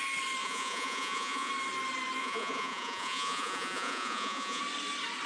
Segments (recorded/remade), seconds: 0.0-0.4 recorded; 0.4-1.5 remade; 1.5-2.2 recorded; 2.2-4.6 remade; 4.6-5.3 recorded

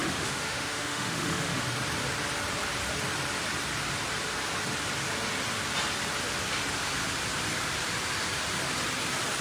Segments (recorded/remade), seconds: 0.0-1.6 remade; 1.6-9.4 recorded

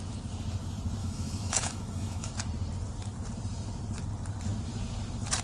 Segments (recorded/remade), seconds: 0.0-1.0 recorded; 1.0-2.3 remade; 2.3-5.4 recorded

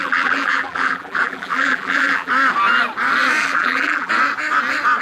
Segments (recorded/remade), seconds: 0.0-2.3 remade; 2.3-3.4 recorded; 3.4-4.1 remade; 4.1-5.0 recorded

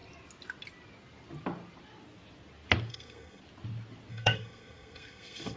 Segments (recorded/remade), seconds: 0.0-2.9 recorded; 2.9-3.4 remade; 3.4-4.1 recorded; 4.1-5.6 remade

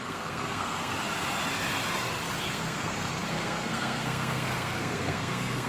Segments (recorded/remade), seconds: 0.0-0.9 remade; 0.9-2.4 recorded; 2.4-5.7 remade

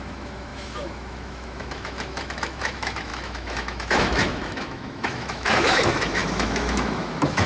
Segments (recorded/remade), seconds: 0.0-7.5 remade